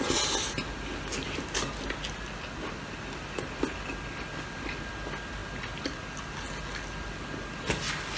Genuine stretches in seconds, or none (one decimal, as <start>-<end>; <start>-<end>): 0.0-8.2

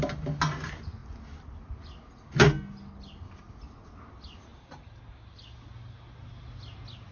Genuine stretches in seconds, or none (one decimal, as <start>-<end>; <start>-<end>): 0.0-4.5; 5.0-7.1

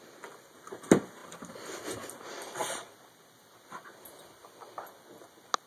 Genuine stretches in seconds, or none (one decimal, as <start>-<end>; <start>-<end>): 0.0-5.7

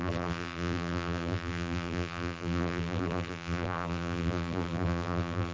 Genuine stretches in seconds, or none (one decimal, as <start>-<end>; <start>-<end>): none

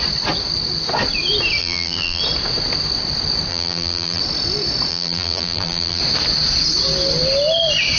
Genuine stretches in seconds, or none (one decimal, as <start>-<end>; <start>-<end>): 0.0-1.6; 2.2-3.5; 4.2-4.9; 6.0-8.0

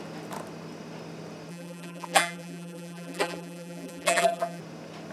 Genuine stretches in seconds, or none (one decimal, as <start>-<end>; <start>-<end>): 0.0-1.5; 4.6-5.1